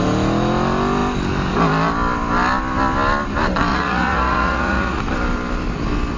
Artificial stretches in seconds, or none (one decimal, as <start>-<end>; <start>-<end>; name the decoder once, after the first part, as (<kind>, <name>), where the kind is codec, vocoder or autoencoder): 3.7-5.0 (vocoder, Vocos)